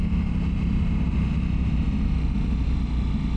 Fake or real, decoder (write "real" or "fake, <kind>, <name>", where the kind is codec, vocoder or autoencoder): real